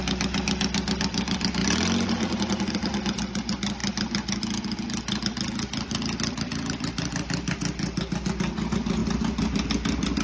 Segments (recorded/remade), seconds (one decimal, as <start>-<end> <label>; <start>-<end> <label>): 0.0-10.2 recorded